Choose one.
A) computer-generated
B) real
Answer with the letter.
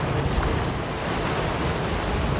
B